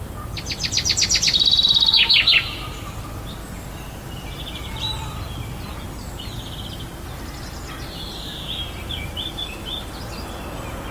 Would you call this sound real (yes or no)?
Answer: yes